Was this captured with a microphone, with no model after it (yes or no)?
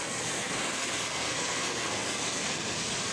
no